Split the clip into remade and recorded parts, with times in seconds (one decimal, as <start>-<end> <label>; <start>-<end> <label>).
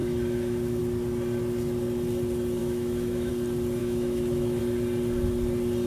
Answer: 0.0-0.8 remade; 0.8-2.6 recorded; 2.6-3.3 remade; 3.3-3.8 recorded; 3.8-4.6 remade; 4.6-5.9 recorded